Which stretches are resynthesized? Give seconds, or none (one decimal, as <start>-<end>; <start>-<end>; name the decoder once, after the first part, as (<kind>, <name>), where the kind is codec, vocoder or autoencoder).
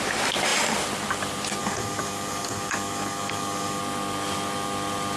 1.6-3.8 (codec, DAC)